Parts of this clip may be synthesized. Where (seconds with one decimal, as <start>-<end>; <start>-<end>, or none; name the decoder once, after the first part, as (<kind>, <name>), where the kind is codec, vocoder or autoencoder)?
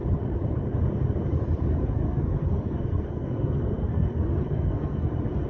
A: 1.8-5.1 (codec, SNAC)